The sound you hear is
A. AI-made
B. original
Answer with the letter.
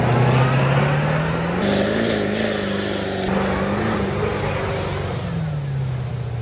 B